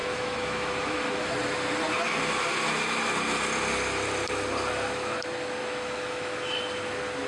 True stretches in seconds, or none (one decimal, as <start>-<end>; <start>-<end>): 1.3-5.6; 6.6-7.3